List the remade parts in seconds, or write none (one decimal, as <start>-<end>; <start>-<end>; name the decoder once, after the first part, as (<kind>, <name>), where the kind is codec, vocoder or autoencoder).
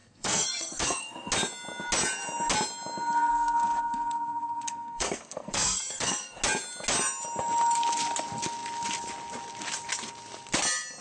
0.0-1.3 (codec, SNAC); 3.3-6.4